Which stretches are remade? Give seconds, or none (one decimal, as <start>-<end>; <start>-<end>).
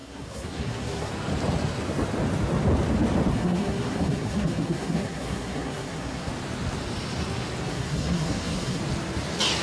0.0-1.1; 3.3-6.3; 7.7-8.8